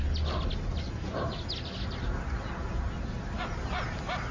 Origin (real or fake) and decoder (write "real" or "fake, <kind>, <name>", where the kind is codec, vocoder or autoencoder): real